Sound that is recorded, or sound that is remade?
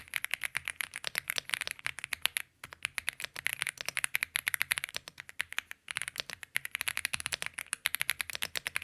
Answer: recorded